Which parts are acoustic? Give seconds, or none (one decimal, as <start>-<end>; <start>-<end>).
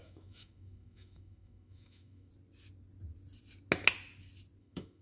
2.3-4.6